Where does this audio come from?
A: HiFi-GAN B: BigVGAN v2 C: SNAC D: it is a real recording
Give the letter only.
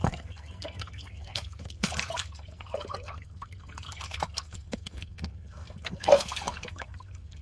C